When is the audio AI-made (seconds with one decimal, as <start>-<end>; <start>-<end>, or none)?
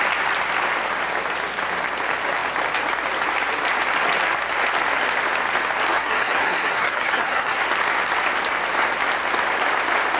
5.9-7.6